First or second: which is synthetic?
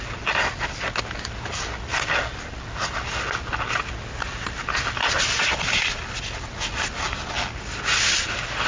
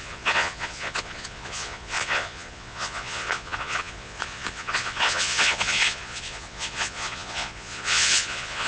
second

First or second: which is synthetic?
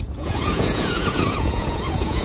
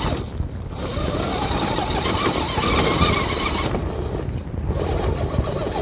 first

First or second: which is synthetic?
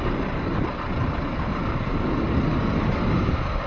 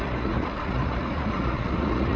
second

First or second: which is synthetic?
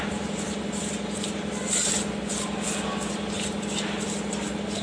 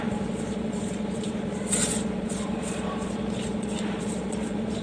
second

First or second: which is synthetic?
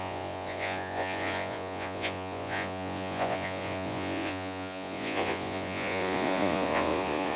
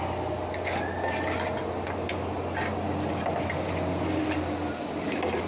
first